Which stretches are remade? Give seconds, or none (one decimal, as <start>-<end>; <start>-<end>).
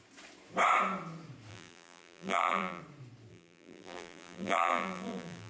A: 1.5-2.8; 3.3-5.5